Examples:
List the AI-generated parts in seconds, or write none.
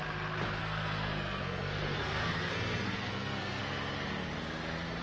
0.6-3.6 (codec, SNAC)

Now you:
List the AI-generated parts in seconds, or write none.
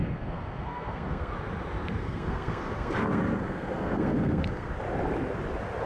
0.0-1.3 (codec, SNAC); 2.0-4.7